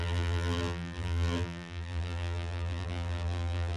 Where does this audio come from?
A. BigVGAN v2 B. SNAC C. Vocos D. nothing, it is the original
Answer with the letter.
A